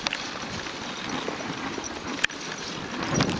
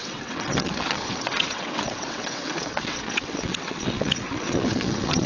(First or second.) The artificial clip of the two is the second